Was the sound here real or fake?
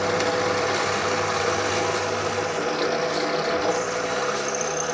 real